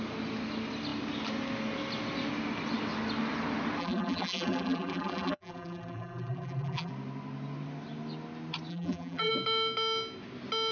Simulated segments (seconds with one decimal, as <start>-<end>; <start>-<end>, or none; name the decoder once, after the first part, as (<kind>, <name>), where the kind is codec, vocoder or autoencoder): 3.8-6.9 (vocoder, BigVGAN v2); 8.7-9.3